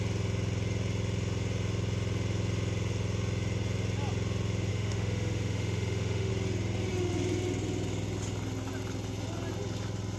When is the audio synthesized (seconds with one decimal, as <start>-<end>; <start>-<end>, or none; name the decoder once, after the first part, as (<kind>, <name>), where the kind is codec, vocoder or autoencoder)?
4.7-6.3 (autoencoder, DAC-VAE)